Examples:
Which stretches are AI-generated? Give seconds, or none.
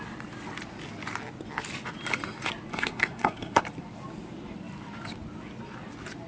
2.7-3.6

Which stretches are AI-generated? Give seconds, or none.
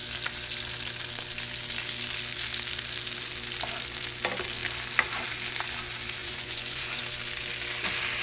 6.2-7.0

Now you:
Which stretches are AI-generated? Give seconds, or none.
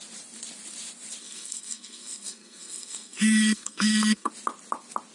1.2-4.3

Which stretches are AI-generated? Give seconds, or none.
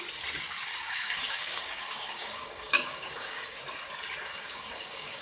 0.7-3.6; 4.3-5.2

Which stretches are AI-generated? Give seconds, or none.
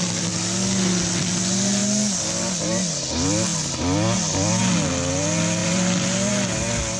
5.6-6.3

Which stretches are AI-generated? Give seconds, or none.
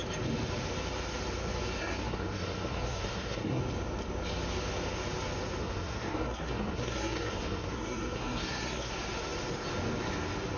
1.8-3.6; 5.6-8.9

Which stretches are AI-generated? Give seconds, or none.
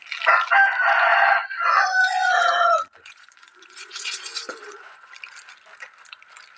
1.1-5.1